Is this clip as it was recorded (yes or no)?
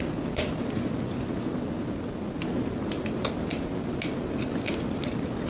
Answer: yes